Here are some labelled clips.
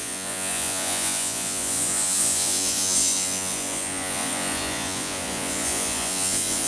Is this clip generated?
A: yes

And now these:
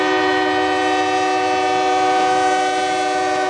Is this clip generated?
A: yes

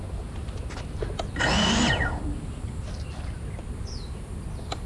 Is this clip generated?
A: no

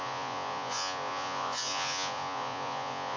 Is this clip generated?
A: yes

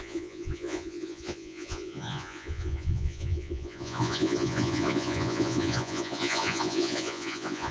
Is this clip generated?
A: yes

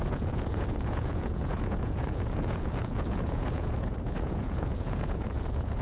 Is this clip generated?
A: yes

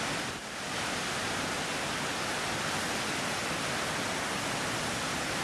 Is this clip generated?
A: no